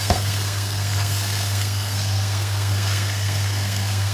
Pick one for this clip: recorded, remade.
remade